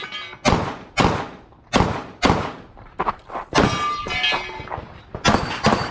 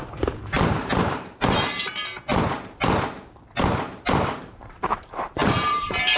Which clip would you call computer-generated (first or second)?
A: second